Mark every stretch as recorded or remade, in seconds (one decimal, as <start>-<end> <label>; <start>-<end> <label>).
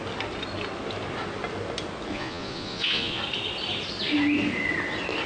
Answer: 0.0-2.1 recorded; 2.1-3.2 remade; 3.2-5.3 recorded